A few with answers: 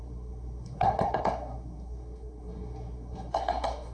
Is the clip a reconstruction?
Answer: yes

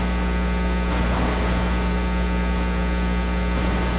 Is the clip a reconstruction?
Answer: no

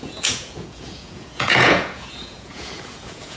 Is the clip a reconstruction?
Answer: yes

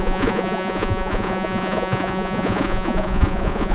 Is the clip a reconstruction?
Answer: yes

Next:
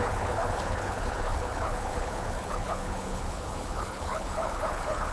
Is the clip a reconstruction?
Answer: yes